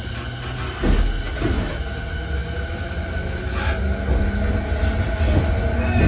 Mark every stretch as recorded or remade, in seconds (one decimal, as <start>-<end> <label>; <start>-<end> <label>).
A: 0.0-6.1 recorded